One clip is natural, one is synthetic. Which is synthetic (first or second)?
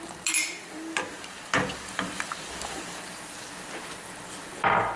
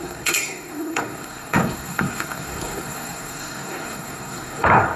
second